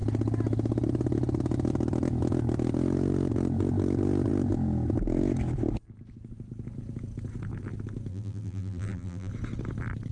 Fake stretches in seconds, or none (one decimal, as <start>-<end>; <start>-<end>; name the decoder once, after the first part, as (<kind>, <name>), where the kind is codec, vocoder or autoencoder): 8.1-9.3 (vocoder, BigVGAN v2)